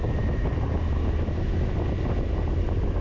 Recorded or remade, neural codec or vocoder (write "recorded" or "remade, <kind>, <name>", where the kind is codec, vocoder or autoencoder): recorded